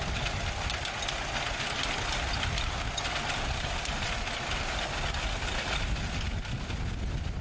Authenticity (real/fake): real